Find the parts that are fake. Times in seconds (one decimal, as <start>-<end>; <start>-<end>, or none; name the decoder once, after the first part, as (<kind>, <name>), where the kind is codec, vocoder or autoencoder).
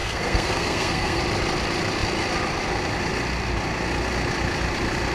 0.0-1.2 (codec, SNAC)